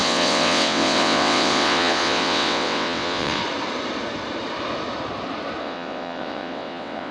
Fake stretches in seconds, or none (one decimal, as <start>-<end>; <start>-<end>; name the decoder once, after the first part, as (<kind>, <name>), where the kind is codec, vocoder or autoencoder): 0.0-3.4 (vocoder, WaveNeXt); 5.6-7.1